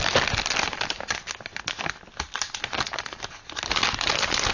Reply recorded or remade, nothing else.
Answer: recorded